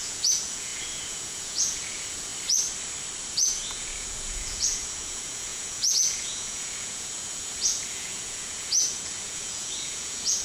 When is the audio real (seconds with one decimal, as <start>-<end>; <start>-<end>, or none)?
2.3-3.2